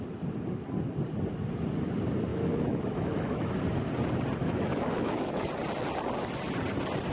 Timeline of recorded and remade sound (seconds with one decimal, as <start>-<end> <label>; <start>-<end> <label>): 0.0-2.3 recorded; 2.3-3.5 remade; 3.5-4.4 recorded; 4.4-5.5 remade; 5.5-7.1 recorded